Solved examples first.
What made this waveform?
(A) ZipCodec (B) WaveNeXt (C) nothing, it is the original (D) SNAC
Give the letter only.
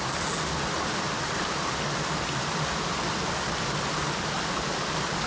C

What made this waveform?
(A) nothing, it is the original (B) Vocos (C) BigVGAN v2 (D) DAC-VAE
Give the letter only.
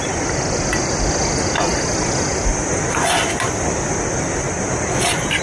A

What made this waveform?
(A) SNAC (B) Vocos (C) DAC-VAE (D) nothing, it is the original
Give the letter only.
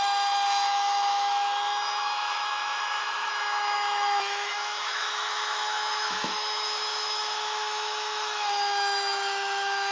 C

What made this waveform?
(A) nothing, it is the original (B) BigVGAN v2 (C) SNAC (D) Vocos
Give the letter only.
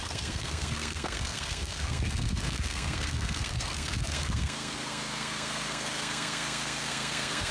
C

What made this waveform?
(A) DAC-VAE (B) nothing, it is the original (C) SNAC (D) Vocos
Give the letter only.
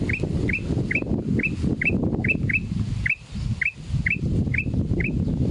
B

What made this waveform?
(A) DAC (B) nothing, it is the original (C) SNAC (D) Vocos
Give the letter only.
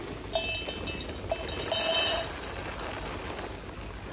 B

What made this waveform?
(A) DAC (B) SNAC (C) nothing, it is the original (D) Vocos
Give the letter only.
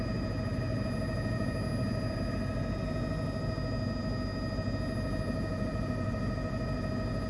C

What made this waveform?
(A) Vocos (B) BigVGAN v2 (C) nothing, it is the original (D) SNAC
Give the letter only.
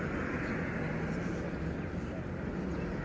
C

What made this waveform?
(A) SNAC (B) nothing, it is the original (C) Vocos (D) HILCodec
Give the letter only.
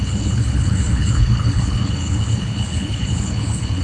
D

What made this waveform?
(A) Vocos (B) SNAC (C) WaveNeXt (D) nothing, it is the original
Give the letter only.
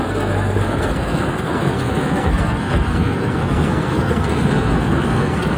B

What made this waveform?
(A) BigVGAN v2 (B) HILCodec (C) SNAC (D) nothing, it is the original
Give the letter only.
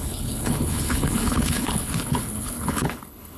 B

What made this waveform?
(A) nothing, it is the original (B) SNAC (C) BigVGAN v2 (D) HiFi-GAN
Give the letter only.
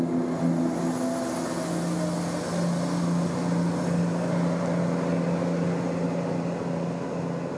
A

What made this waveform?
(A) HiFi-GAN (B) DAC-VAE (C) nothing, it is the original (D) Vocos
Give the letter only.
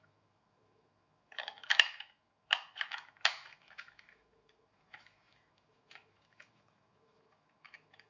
B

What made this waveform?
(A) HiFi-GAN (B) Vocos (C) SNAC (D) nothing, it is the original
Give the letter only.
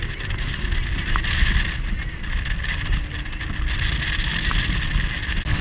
D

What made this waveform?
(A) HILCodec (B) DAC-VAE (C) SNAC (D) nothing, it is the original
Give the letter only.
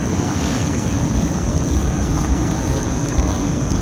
C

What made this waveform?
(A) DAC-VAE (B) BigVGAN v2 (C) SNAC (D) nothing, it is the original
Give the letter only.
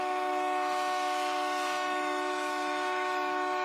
A